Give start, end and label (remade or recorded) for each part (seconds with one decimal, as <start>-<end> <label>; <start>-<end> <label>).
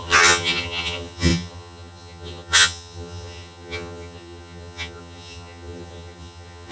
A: 0.0-6.7 remade